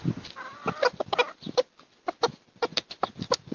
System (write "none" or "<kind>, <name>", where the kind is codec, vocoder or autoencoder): none